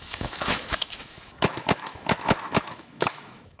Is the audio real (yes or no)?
no